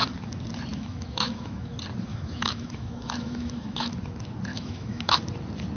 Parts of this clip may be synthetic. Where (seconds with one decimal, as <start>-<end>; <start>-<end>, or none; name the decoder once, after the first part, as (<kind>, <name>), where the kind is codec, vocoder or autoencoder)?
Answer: 0.7-1.7 (autoencoder, DAC-VAE); 2.1-3.9; 4.5-5.2